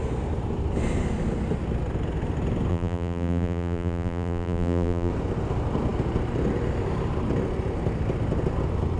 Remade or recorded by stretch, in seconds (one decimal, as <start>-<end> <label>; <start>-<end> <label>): 0.0-2.7 recorded; 2.7-5.1 remade; 5.1-9.0 recorded